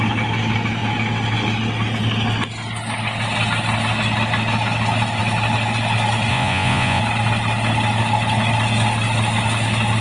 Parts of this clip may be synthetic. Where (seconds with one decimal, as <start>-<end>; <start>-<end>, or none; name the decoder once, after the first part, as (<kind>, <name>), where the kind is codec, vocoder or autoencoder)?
6.3-7.0 (vocoder, Vocos)